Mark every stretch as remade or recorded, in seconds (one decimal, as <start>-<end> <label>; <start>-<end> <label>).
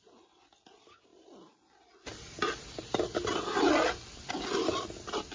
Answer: 0.0-5.3 recorded